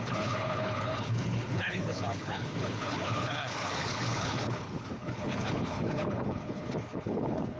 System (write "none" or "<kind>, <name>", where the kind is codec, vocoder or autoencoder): codec, HILCodec